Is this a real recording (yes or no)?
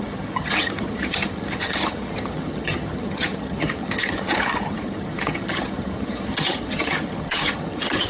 no